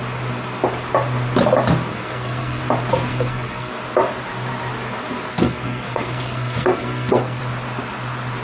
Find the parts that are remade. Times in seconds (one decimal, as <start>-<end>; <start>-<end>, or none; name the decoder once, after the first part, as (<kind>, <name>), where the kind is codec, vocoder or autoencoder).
1.9-2.6 (codec, SNAC); 3.1-3.7; 5.3-7.4